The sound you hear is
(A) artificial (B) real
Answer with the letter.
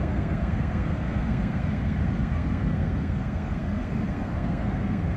A